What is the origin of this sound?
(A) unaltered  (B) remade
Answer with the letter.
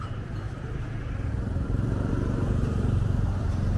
B